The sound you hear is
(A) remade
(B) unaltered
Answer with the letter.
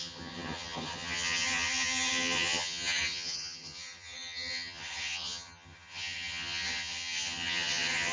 A